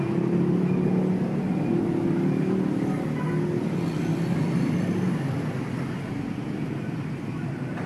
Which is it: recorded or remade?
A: recorded